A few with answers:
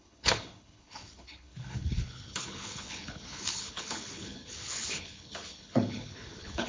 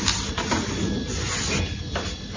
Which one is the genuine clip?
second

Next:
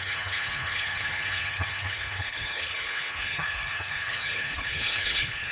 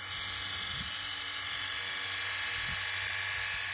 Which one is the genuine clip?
second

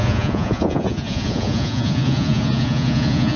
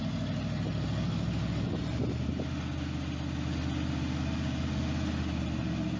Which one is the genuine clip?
second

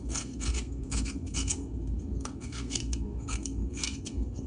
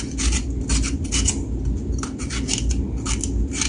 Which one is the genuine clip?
second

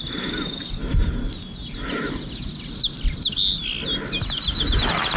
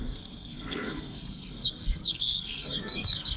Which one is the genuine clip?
first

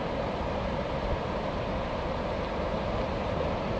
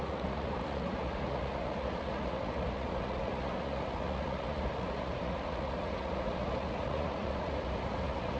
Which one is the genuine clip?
first